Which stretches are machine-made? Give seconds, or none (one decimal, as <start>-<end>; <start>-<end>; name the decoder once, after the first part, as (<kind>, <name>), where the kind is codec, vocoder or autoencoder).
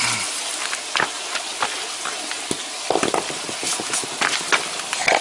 none